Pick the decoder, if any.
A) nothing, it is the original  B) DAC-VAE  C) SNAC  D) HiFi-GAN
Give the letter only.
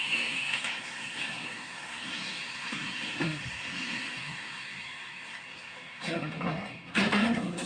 C